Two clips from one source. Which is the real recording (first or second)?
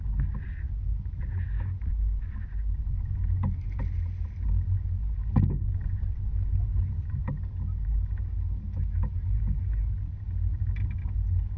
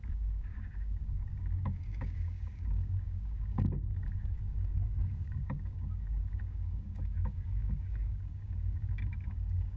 first